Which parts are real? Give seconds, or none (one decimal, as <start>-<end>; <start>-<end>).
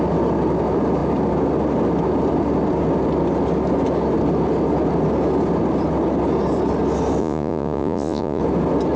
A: 0.0-7.2; 8.4-9.0